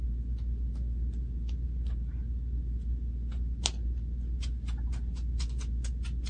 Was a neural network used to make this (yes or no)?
no